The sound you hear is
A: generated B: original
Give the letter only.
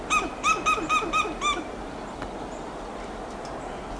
B